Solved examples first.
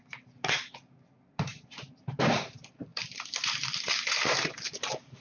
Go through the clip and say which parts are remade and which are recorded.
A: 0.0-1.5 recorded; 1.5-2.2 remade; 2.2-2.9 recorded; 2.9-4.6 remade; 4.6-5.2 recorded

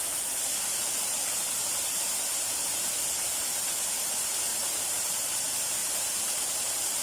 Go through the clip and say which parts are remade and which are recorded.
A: 0.0-0.7 recorded; 0.7-4.1 remade; 4.1-5.8 recorded; 5.8-6.3 remade; 6.3-7.0 recorded

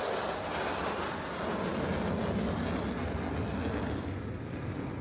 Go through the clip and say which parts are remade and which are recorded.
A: 0.0-5.0 recorded

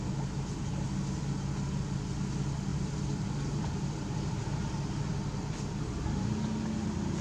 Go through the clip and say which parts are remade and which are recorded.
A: 0.0-2.7 recorded; 2.7-4.4 remade; 4.4-7.2 recorded

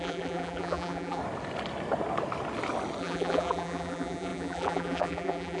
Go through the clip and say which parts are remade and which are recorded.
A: 0.0-1.2 remade; 1.2-3.0 recorded; 3.0-5.6 remade

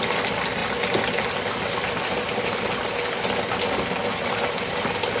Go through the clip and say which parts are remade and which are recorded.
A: 0.0-5.2 recorded

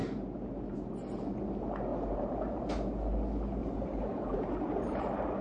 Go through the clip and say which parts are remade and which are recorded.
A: 0.0-0.9 remade; 0.9-1.9 recorded; 1.9-2.6 remade; 2.6-3.6 recorded; 3.6-5.0 remade; 5.0-5.4 recorded